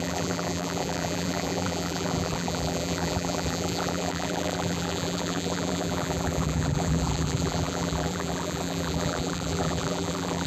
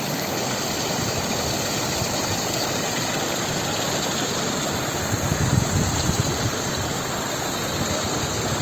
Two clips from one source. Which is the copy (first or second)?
first